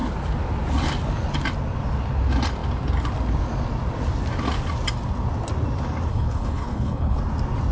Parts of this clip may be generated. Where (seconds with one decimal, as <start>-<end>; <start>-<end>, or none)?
6.1-7.2